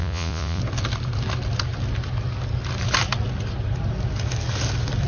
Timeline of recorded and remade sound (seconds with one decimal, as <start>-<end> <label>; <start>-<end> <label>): 0.0-0.6 remade; 0.6-5.1 recorded